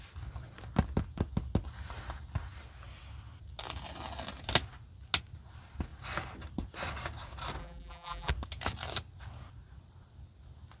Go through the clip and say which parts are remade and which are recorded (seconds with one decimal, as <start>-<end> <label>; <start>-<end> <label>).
0.0-7.6 recorded; 7.6-8.3 remade; 8.3-10.8 recorded